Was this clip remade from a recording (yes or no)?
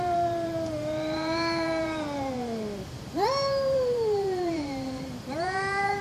yes